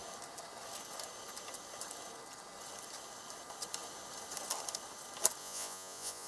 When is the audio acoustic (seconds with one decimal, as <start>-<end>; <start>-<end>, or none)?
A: 0.0-5.4